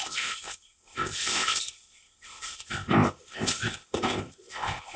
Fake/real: fake